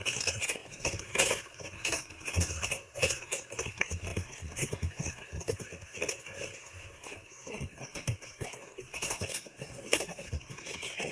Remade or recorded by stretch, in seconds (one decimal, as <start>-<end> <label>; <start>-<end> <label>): 0.0-11.1 remade